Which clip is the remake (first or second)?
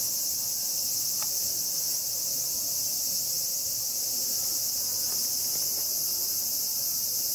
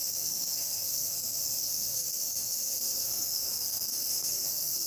second